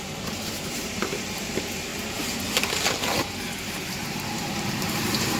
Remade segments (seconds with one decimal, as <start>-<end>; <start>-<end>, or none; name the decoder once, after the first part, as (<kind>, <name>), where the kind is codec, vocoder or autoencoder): 0.0-1.9 (vocoder, BigVGAN v2); 4.7-5.4